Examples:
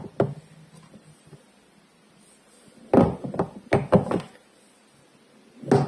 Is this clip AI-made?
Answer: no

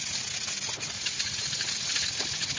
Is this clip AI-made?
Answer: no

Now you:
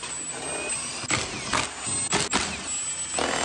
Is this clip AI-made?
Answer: no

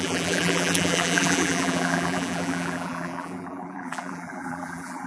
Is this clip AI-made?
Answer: yes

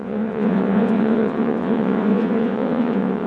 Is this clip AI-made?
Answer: yes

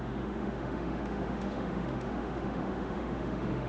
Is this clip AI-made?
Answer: yes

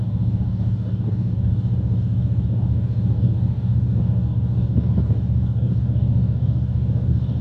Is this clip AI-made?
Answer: yes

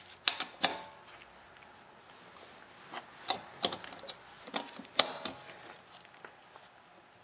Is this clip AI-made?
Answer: no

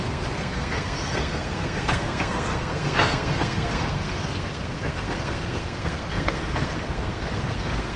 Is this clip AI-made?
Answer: yes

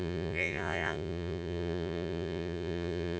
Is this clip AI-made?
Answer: yes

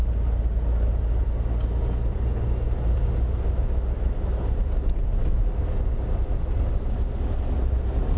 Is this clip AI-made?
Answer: no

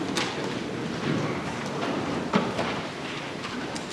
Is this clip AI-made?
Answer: no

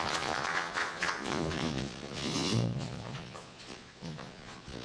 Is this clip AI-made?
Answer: yes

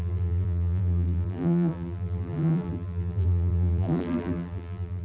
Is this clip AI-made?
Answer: yes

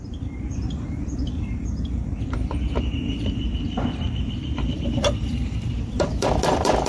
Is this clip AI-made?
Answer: yes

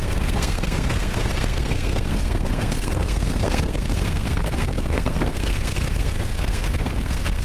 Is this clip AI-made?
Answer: yes